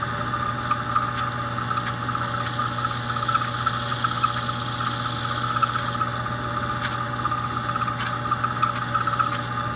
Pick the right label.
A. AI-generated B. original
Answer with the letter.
B